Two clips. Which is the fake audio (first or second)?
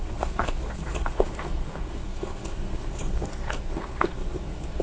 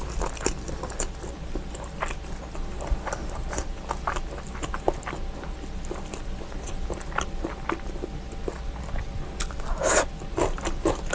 first